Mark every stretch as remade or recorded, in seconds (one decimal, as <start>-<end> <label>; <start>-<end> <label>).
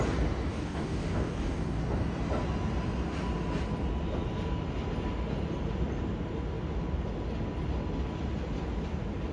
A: 0.0-0.5 recorded; 0.5-1.8 remade; 1.8-9.3 recorded